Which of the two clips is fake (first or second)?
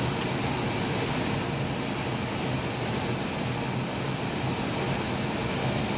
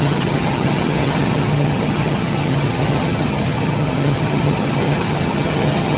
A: second